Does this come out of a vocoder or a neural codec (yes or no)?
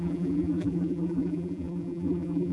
yes